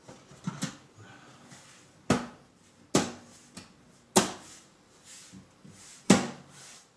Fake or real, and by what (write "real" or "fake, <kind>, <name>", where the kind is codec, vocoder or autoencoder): real